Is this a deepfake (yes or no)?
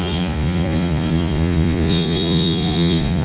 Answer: yes